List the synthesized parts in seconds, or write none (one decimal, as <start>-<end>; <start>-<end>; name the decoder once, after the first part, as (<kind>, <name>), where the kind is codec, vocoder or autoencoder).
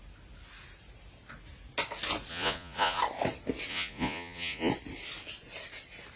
2.3-3.0 (vocoder, Vocos); 3.7-4.7